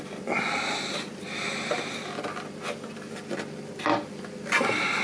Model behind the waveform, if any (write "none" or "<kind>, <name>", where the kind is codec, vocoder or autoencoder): none